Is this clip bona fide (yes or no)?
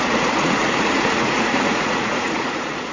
no